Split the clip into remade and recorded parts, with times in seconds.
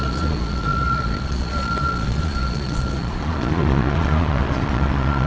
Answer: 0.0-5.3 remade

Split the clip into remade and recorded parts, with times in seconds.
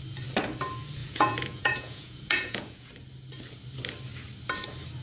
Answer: 0.0-1.0 recorded; 1.0-2.9 remade; 2.9-5.0 recorded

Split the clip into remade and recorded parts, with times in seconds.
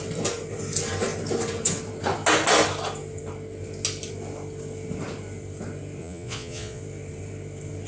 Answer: 0.0-6.0 recorded; 6.0-6.8 remade; 6.8-7.9 recorded